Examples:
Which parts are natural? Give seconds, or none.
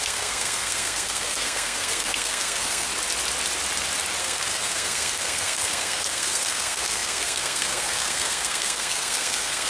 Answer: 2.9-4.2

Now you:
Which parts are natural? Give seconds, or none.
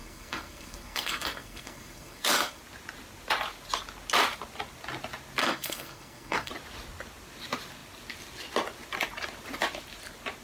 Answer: 2.6-5.4; 6.5-10.4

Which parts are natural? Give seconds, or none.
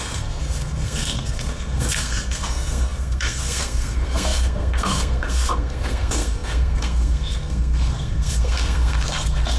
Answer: none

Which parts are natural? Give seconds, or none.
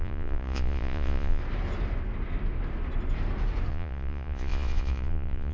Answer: 1.4-3.7